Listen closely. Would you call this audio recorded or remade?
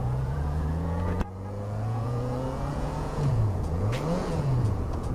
remade